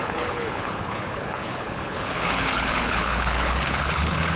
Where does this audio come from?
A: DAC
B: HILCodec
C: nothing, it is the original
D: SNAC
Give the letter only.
B